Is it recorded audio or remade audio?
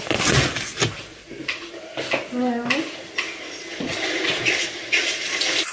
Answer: recorded